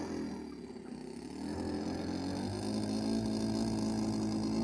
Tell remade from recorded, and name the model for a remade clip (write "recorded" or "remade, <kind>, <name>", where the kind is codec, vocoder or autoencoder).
recorded